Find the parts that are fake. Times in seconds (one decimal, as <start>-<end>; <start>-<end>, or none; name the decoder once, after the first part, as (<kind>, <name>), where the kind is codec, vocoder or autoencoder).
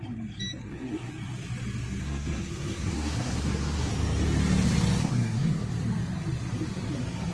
0.6-1.1 (codec, SNAC); 2.0-3.9; 5.0-5.7